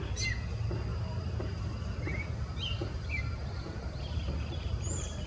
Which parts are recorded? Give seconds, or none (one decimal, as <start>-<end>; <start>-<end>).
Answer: 0.0-0.9; 1.6-2.1